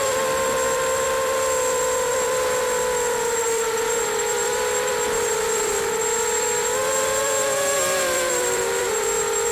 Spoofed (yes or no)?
yes